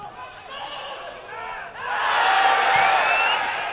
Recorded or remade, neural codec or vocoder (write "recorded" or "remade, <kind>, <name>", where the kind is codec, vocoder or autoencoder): recorded